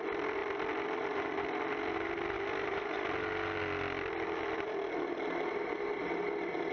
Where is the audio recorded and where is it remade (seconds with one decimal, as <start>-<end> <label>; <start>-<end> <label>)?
0.0-6.7 recorded